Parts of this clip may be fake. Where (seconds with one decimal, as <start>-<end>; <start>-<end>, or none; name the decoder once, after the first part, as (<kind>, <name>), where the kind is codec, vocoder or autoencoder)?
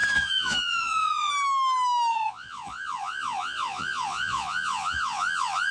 0.0-1.3 (vocoder, Vocos); 2.1-5.7